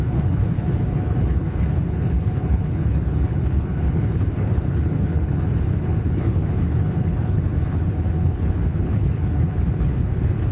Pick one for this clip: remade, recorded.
remade